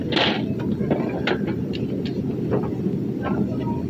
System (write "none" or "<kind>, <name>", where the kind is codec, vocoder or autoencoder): none